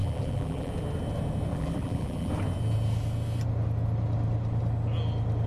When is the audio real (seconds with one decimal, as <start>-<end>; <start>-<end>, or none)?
0.7-1.5; 2.3-5.5